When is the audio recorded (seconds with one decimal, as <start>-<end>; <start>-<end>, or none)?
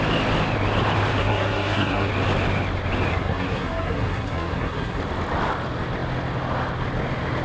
0.0-1.2; 2.1-3.1; 5.0-7.4